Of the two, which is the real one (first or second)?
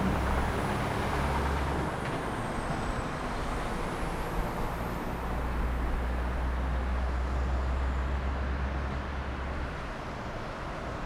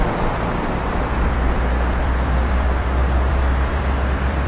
first